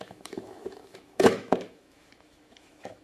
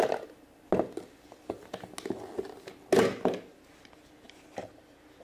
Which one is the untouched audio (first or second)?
second